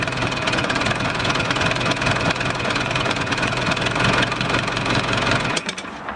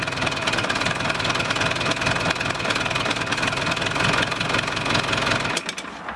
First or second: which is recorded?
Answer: second